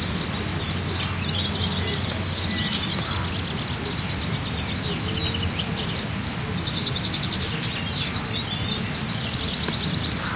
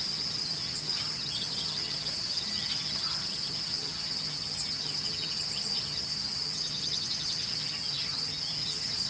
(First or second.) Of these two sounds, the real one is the first